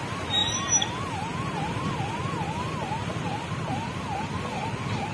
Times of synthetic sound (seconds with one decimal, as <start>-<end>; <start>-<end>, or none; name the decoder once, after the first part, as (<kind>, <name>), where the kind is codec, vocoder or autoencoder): none